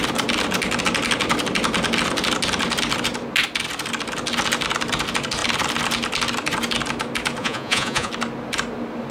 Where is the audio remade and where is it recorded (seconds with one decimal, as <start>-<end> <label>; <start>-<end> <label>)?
0.0-7.4 recorded; 7.4-8.1 remade; 8.1-9.1 recorded